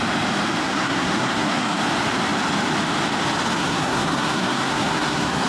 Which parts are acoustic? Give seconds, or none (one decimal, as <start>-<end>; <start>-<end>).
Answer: 0.0-0.6; 1.8-3.5